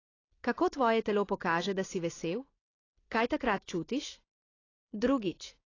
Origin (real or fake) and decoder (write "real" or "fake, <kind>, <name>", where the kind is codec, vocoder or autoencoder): fake, vocoder, BigVGAN v2